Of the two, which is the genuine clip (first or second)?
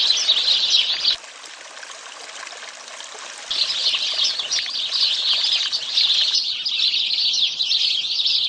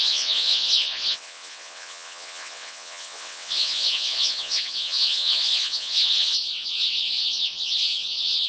first